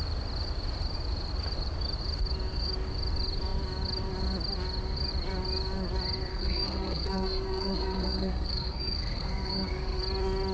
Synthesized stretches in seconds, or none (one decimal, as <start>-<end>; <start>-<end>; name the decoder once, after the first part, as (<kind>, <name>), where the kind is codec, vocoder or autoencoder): 6.3-10.0 (codec, SNAC)